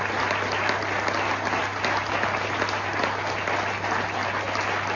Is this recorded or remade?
recorded